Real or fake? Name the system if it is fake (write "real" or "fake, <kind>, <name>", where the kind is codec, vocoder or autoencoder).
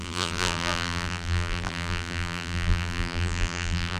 fake, vocoder, BigVGAN v2